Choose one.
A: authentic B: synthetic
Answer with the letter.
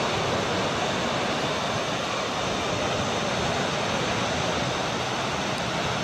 A